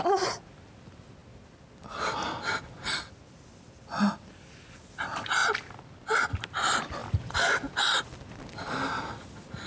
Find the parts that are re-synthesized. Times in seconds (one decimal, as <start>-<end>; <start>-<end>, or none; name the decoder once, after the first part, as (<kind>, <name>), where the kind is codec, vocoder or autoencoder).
none